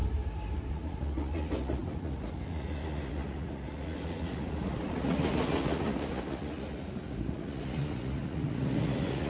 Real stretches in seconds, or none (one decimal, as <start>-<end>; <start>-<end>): 0.0-0.7